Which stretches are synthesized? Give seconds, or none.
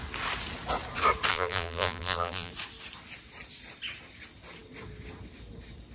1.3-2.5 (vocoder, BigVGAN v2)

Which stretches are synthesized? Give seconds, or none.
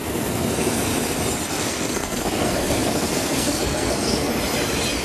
0.0-0.9 (codec, SNAC); 1.5-4.3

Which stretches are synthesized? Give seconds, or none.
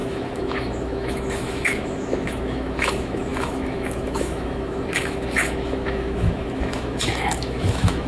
0.0-8.1 (autoencoder, DAC-VAE)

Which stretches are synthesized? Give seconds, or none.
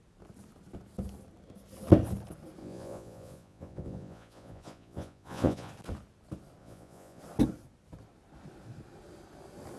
2.6-5.7 (vocoder, Vocos); 6.6-7.2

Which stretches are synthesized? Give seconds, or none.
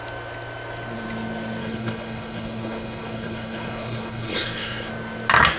1.6-4.9 (codec, HILCodec)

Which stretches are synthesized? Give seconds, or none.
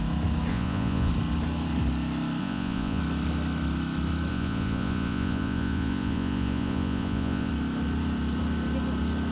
0.5-1.1 (vocoder, Vocos); 2.4-3.0; 4.3-7.5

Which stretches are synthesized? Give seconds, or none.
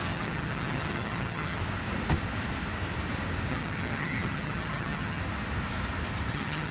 0.0-1.6 (vocoder, HiFi-GAN); 3.5-5.2; 6.3-6.7